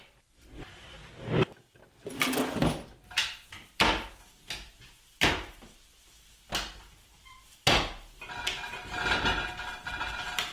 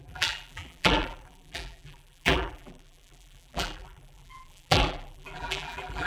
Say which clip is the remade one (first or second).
second